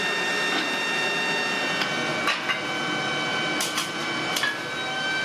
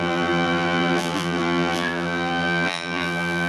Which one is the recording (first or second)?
first